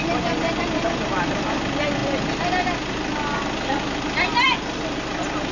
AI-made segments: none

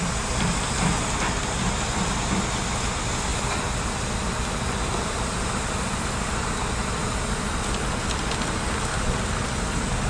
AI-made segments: 3.3-6.0 (vocoder, BigVGAN v2); 6.8-7.9

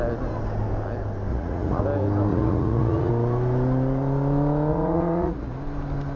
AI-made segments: 1.3-1.8 (vocoder, Vocos); 2.3-3.1; 4.7-5.5

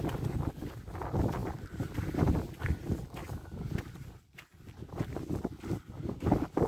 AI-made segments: none

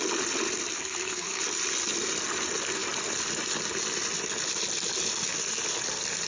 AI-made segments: 0.7-1.4 (codec, SNAC)